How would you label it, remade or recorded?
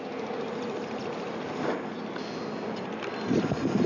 recorded